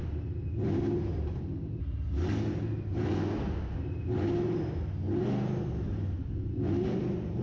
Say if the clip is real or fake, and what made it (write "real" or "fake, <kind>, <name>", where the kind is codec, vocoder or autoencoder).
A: real